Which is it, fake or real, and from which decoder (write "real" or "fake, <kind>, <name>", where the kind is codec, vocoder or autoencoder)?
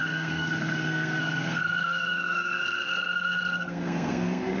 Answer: fake, codec, SNAC